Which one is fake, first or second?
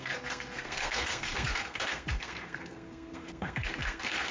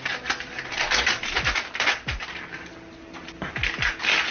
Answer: first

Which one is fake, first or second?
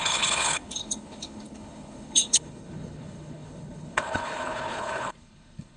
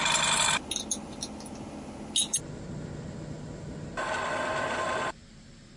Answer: first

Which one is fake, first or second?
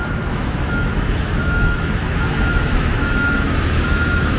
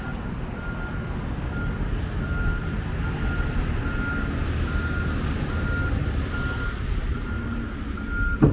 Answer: first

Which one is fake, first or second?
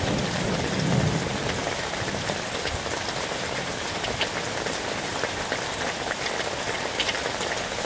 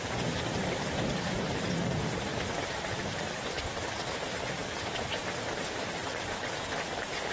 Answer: second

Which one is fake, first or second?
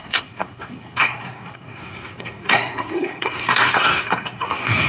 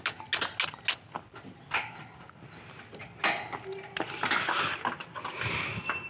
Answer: first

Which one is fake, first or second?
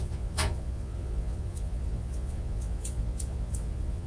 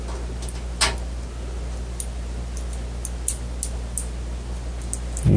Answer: first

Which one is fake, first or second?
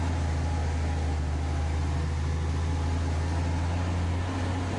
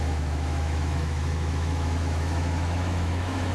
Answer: second